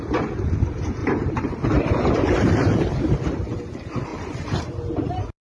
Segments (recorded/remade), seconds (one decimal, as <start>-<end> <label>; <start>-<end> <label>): 0.0-1.0 recorded; 1.0-3.2 remade; 3.2-4.1 recorded; 4.1-5.4 remade